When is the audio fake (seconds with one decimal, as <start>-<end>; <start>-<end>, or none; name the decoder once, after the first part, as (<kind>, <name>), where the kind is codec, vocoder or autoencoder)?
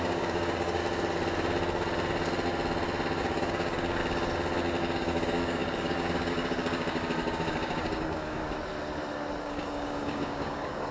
0.0-0.8 (codec, DAC); 3.2-4.0; 4.8-8.4; 9.4-10.9